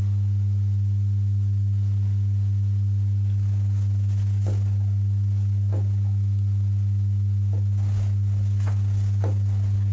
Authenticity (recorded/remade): recorded